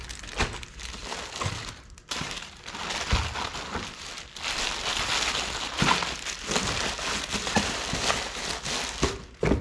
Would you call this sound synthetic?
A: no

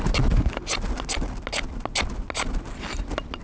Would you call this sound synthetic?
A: no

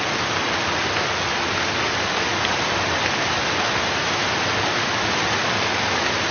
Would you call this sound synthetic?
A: no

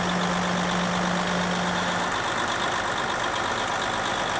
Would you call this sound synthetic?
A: no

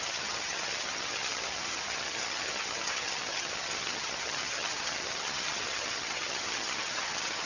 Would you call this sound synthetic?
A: yes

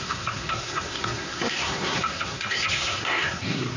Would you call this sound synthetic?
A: yes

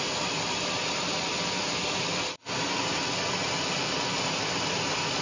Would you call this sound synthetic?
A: no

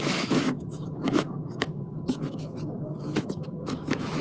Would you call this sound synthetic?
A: yes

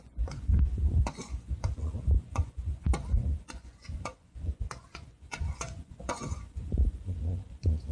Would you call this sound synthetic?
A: yes